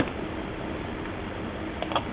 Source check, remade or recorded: recorded